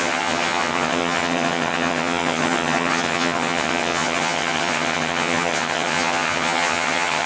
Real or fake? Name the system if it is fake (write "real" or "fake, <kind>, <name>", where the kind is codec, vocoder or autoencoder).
fake, vocoder, HiFi-GAN